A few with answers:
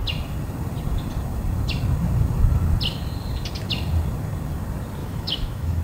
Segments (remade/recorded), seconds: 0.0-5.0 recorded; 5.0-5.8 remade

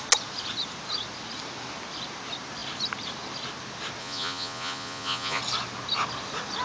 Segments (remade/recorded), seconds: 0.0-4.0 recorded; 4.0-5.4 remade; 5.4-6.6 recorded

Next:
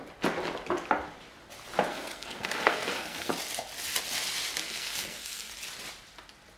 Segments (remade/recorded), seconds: 0.0-1.9 recorded; 1.9-3.3 remade; 3.3-4.6 recorded; 4.6-5.5 remade; 5.5-6.6 recorded